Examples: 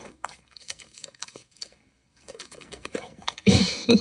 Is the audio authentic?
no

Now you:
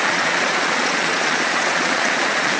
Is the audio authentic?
no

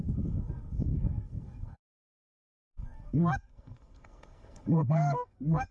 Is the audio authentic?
no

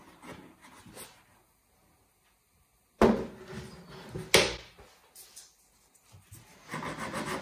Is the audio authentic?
yes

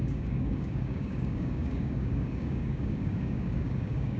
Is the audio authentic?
no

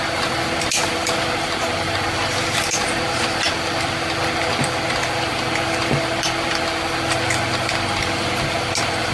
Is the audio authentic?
yes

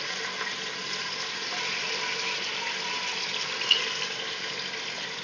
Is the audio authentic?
yes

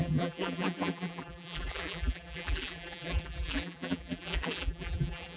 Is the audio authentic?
no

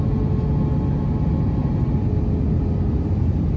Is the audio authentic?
yes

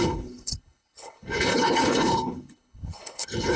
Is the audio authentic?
no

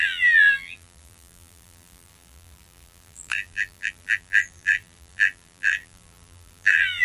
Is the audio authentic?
no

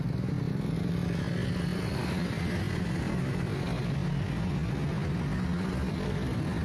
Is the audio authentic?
yes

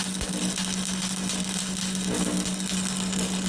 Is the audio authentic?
yes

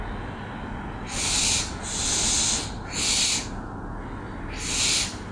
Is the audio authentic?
yes